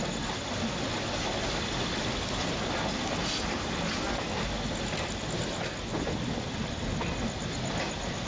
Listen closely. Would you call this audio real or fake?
real